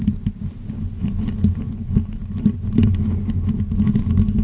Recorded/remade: recorded